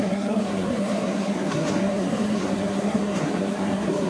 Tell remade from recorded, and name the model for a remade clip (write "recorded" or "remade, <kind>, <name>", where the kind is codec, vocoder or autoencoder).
remade, codec, SNAC